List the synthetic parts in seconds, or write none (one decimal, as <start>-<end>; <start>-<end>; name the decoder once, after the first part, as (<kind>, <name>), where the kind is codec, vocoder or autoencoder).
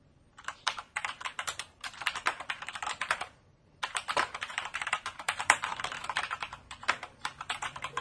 0.0-8.0 (vocoder, BigVGAN v2)